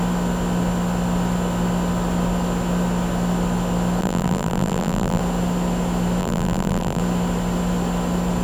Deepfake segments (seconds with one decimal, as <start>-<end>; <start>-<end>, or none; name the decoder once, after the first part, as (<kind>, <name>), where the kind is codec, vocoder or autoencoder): 4.0-5.2 (vocoder, BigVGAN v2); 6.2-7.0